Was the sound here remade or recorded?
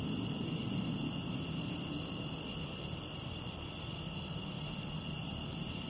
remade